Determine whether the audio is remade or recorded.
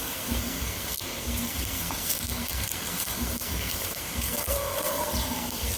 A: remade